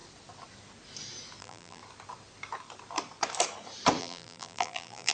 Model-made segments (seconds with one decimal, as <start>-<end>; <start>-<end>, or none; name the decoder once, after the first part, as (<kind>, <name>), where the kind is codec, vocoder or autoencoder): 1.4-1.8 (vocoder, BigVGAN v2); 4.0-5.1